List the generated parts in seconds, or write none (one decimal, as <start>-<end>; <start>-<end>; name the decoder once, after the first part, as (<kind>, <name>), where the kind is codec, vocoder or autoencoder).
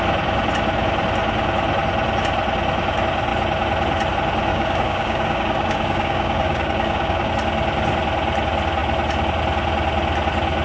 4.5-7.3 (codec, DAC)